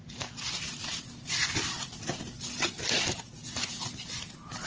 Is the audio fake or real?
real